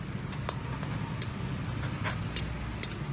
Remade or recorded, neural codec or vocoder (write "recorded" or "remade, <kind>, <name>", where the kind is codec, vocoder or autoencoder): recorded